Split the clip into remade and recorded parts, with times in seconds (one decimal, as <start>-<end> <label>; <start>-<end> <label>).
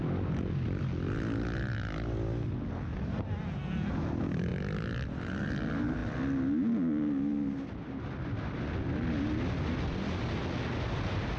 0.0-11.4 recorded